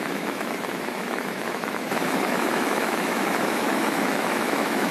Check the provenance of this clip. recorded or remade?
remade